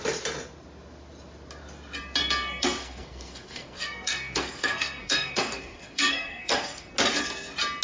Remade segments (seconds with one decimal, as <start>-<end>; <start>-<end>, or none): 2.2-6.9